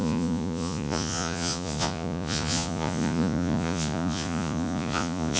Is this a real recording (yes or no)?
no